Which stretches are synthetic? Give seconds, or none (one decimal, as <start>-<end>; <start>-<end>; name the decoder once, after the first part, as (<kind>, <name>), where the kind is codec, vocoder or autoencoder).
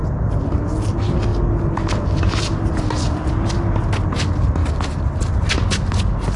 1.3-3.5 (vocoder, BigVGAN v2); 4.6-6.0